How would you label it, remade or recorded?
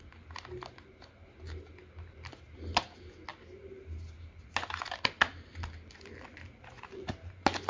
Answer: recorded